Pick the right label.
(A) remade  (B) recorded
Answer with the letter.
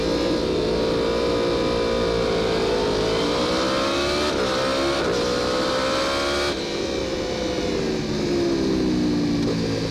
B